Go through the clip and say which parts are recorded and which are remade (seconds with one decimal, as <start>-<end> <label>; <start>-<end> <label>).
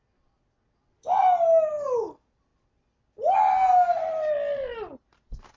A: 0.0-5.6 recorded